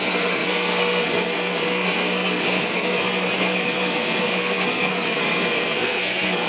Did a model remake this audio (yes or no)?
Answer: yes